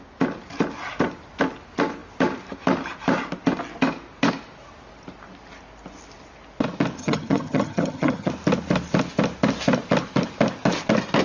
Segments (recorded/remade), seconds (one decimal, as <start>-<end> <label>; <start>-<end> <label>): 0.0-7.0 recorded; 7.0-8.3 remade; 8.3-11.2 recorded